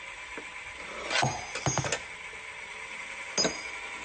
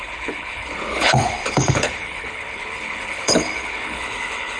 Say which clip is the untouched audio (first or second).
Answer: first